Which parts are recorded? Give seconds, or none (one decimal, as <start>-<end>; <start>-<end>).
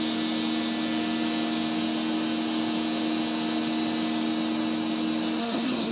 0.0-5.4